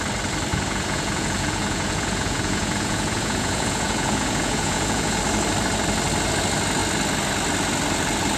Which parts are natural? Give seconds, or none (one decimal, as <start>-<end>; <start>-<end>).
0.0-0.5; 5.2-8.4